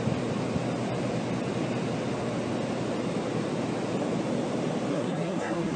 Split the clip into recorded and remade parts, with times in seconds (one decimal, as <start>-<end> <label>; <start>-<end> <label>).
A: 0.0-4.9 recorded; 4.9-5.8 remade